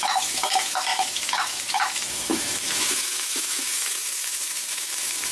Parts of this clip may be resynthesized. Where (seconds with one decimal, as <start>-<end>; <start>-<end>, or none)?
0.0-5.3